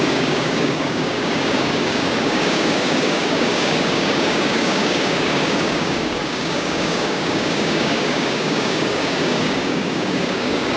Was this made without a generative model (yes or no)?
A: no